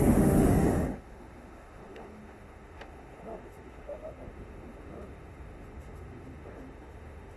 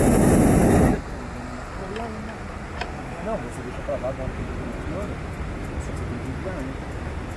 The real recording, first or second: second